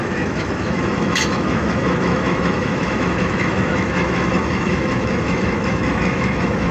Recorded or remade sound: remade